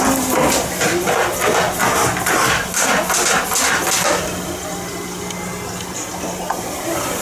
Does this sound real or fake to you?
real